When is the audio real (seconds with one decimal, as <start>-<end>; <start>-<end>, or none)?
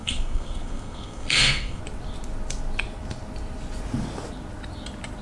1.8-5.2